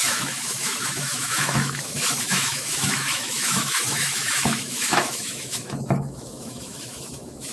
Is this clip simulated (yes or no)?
yes